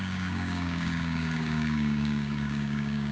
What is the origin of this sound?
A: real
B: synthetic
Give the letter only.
B